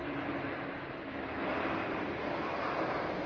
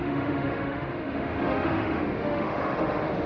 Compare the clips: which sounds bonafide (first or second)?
first